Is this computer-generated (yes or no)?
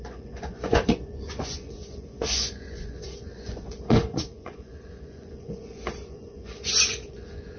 yes